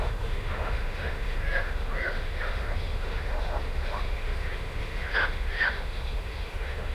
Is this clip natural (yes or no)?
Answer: no